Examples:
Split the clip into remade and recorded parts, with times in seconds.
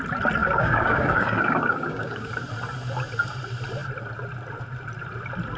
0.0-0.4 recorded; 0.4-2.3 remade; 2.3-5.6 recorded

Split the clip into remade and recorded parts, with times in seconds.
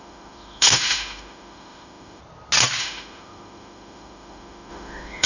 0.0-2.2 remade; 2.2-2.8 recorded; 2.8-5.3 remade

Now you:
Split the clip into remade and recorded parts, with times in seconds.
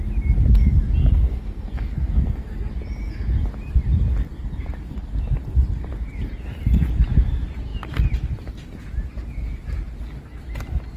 0.0-1.0 recorded; 1.0-2.7 remade; 2.7-11.0 recorded